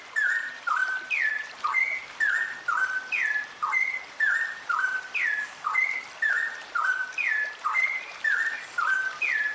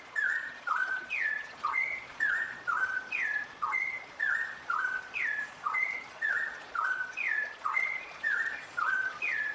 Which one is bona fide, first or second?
first